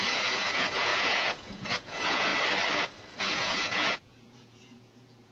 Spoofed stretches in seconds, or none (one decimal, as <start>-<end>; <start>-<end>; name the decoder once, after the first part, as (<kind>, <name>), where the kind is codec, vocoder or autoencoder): 0.0-2.3 (vocoder, Vocos); 3.2-5.3